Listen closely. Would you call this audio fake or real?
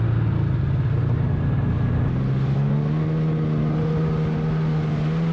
real